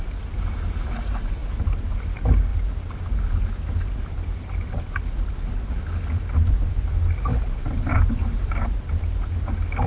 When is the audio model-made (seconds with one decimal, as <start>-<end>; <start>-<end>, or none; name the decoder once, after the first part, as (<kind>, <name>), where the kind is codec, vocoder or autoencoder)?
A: 7.3-8.5 (vocoder, BigVGAN v2)